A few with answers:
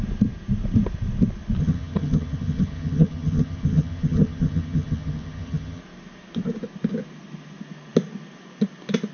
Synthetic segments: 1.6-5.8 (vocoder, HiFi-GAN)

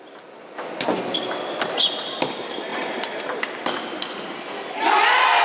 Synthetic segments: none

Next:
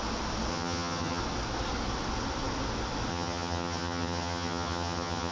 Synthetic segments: 0.5-1.2 (vocoder, HiFi-GAN); 3.1-5.3